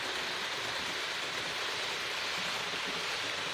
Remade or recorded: remade